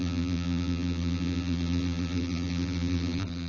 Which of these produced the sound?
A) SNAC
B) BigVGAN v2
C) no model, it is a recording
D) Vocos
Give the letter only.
B